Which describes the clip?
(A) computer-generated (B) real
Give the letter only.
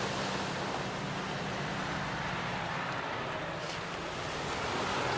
A